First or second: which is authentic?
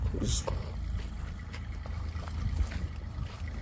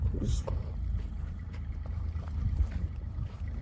first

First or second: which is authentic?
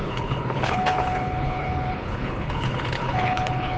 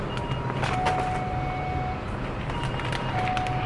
second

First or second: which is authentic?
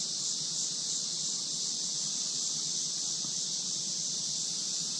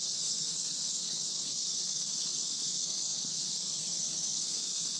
first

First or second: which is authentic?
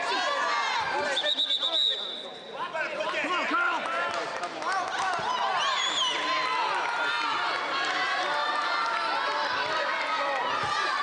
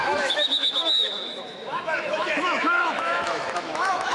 first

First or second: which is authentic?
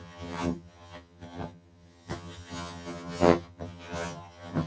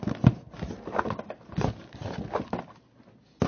second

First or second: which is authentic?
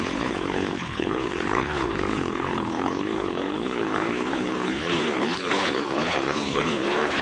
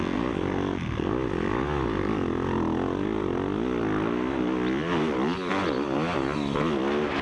second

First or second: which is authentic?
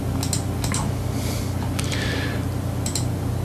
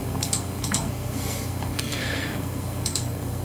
first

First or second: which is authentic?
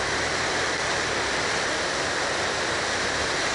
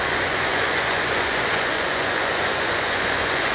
first